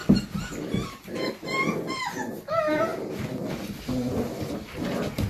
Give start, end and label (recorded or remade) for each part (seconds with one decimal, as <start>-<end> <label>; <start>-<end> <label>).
0.0-1.3 remade; 1.3-5.3 recorded